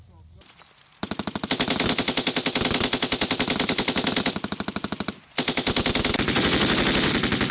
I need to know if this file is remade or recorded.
recorded